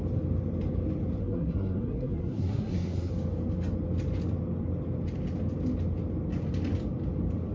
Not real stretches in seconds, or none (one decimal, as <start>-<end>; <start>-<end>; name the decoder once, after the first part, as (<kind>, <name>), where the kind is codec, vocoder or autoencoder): 1.2-3.1 (codec, SNAC)